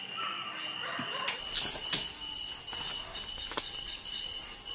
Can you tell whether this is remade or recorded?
recorded